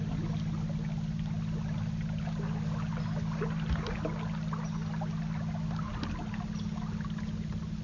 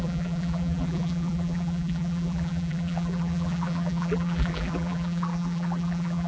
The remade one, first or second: second